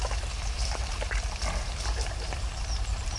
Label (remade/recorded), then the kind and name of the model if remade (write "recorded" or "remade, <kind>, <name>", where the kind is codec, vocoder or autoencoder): remade, vocoder, BigVGAN v2